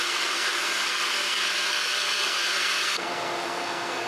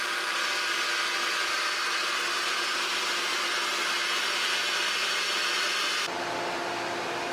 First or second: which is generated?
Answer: first